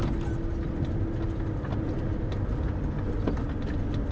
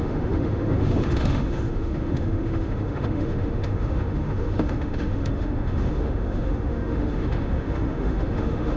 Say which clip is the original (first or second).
first